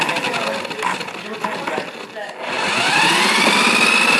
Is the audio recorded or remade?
recorded